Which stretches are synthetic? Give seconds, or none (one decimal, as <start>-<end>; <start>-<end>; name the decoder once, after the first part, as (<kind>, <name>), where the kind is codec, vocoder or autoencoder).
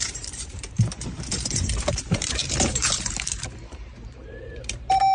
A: 0.0-5.1 (vocoder, BigVGAN v2)